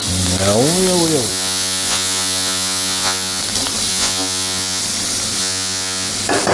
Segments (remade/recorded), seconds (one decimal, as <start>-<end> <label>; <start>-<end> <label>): 0.0-1.3 recorded; 1.3-3.4 remade; 3.4-3.9 recorded; 3.9-4.8 remade; 4.8-5.4 recorded; 5.4-6.1 remade; 6.1-6.5 recorded